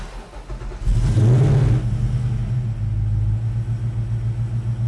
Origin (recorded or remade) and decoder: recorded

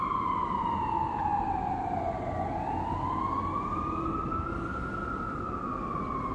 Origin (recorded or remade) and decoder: recorded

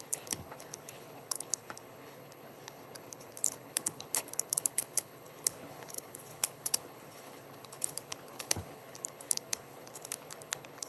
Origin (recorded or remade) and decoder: remade, codec, HILCodec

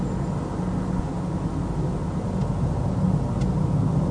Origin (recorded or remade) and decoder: recorded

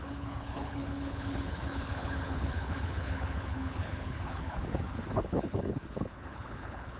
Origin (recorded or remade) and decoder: remade, codec, HILCodec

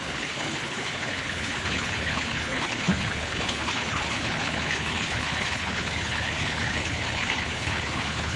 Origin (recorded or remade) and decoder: remade, codec, HILCodec